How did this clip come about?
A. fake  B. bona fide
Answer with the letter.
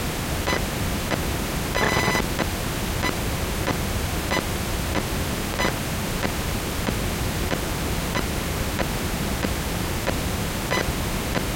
B